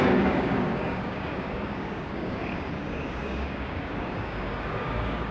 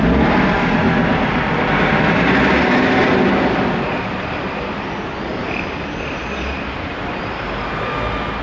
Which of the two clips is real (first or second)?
second